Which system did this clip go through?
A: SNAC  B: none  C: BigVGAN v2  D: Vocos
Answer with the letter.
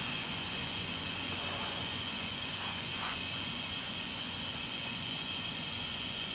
D